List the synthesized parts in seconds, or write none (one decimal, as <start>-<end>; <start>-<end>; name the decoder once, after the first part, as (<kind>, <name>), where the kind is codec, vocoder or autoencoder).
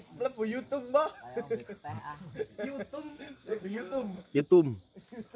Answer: 3.1-4.4 (codec, SNAC)